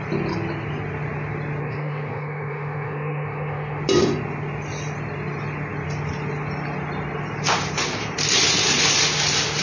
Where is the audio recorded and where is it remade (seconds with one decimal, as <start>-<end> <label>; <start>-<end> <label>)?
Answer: 0.0-1.6 recorded; 1.6-3.8 remade; 3.8-9.6 recorded